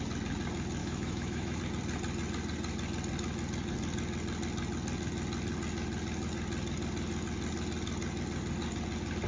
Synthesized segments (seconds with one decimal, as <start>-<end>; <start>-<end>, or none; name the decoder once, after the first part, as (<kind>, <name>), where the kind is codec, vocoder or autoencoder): 0.8-1.6 (autoencoder, DAC-VAE)